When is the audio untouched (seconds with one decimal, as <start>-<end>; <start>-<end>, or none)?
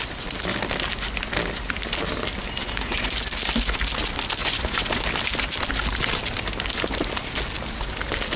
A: 0.0-2.6; 3.1-4.4; 5.0-8.4